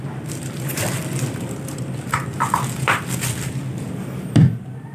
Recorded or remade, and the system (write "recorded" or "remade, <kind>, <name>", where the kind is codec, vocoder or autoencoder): remade, vocoder, BigVGAN v2